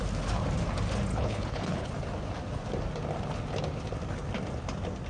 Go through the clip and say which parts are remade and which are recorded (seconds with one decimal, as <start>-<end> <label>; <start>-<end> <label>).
0.0-1.1 recorded; 1.1-1.9 remade; 1.9-5.1 recorded

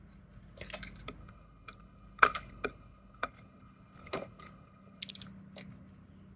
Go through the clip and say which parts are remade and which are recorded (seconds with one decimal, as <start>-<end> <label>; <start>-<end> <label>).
0.0-1.2 recorded; 1.2-5.0 remade; 5.0-6.4 recorded

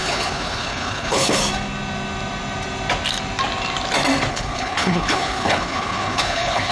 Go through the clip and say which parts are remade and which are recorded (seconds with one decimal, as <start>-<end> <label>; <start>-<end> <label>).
0.0-1.4 remade; 1.4-4.3 recorded; 4.3-6.7 remade

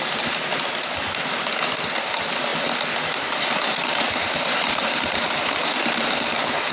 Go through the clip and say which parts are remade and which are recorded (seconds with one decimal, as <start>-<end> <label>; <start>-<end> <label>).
0.0-6.7 recorded